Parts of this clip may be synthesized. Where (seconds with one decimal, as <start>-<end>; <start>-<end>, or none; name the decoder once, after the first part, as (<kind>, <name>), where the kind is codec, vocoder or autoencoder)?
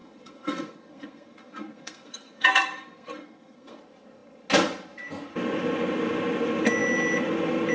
0.0-3.8 (codec, SNAC)